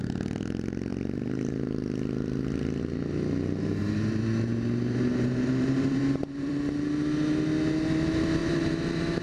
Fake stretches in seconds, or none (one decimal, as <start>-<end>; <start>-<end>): 3.8-6.5; 8.4-9.2